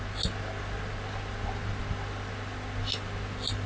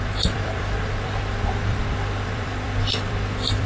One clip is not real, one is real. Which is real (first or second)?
first